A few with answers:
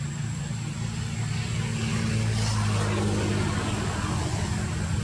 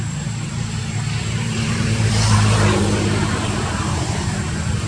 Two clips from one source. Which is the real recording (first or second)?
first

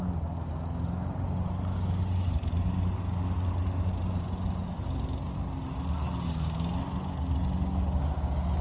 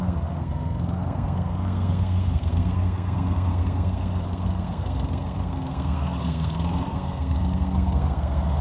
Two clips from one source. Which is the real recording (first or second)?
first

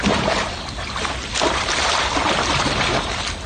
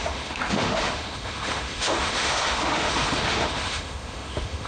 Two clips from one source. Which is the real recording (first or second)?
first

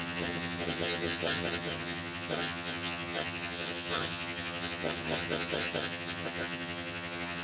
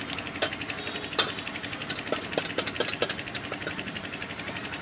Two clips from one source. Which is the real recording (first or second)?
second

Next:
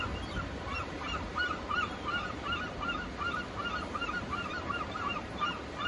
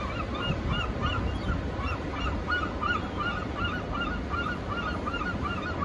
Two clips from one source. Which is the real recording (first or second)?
second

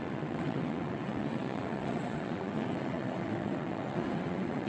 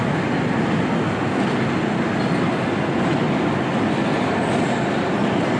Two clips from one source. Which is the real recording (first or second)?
second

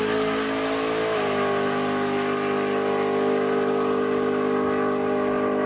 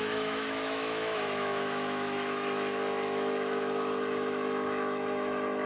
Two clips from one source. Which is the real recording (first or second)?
first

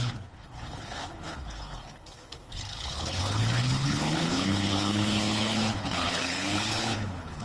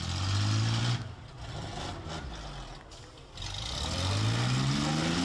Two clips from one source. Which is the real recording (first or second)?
second